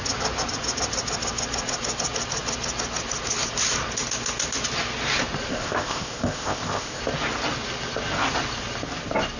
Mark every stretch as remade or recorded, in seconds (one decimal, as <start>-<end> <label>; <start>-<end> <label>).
0.0-5.5 recorded; 5.5-7.0 remade; 7.0-9.4 recorded